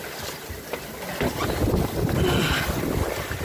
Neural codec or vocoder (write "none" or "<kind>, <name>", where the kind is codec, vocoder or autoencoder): none